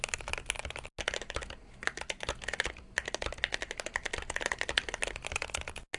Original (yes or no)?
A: yes